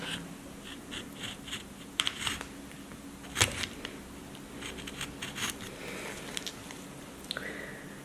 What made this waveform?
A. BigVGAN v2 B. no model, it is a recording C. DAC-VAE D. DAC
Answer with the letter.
B